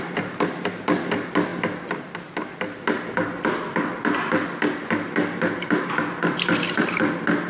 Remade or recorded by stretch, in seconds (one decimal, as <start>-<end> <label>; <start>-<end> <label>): 0.0-7.5 recorded